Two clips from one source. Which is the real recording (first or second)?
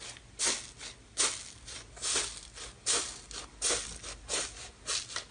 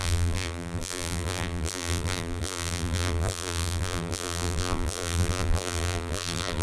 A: first